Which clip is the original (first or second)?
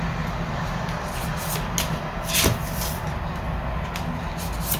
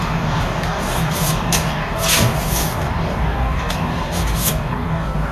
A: first